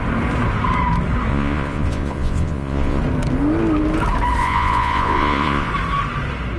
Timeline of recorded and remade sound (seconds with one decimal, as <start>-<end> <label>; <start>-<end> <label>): 0.0-1.3 recorded; 1.3-3.0 remade; 3.0-4.4 recorded; 4.4-5.7 remade; 5.7-6.6 recorded